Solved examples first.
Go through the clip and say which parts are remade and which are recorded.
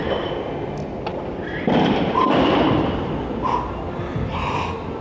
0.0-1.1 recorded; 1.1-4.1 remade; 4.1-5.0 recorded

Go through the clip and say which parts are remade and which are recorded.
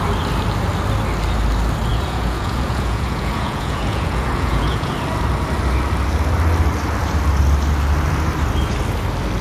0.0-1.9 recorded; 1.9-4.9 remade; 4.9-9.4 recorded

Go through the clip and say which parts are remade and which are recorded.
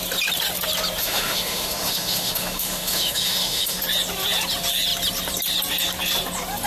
0.0-1.0 recorded; 1.0-3.8 remade; 3.8-6.7 recorded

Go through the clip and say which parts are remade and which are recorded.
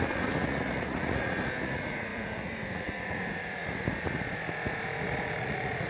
0.0-5.9 remade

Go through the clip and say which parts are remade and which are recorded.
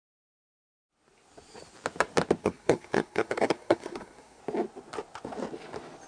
0.0-2.4 recorded; 2.4-4.4 remade; 4.4-6.1 recorded